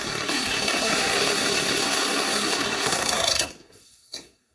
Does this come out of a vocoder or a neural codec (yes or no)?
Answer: yes